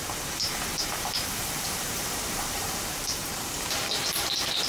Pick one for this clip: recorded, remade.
remade